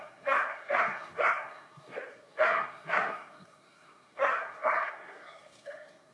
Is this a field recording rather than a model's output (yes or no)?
no